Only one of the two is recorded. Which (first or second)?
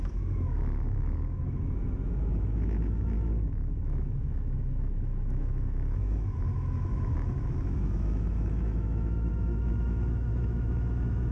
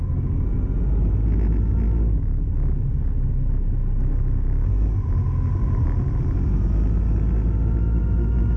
second